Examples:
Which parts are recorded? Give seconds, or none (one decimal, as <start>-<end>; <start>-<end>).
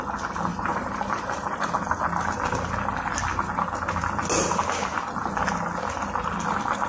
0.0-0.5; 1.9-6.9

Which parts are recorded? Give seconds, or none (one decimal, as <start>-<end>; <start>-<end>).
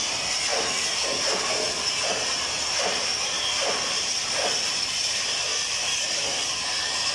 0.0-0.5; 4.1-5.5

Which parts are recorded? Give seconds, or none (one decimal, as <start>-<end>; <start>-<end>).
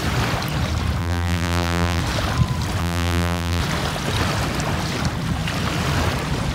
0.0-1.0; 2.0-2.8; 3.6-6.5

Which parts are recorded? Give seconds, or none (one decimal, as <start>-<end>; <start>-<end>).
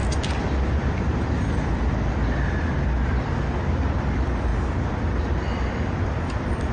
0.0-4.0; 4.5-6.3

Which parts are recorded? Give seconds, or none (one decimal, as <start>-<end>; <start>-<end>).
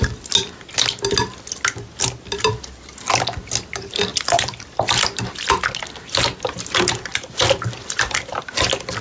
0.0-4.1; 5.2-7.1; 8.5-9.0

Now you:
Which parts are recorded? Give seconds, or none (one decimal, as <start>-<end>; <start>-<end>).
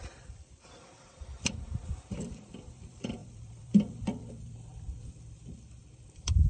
1.3-2.5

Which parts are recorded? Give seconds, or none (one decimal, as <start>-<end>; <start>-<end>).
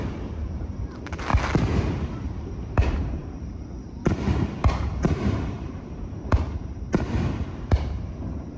1.3-2.0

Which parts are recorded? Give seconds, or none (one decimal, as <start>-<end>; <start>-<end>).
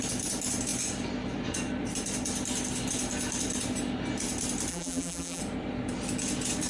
0.0-4.7; 5.4-6.7